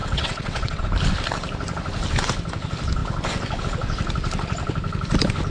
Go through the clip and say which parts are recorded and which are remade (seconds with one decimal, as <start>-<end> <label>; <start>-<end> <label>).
0.0-0.8 remade; 0.8-5.5 recorded